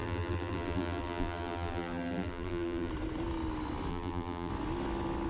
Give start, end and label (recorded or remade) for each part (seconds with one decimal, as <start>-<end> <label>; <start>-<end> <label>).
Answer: 0.0-2.9 remade; 2.9-3.9 recorded; 3.9-4.5 remade; 4.5-5.3 recorded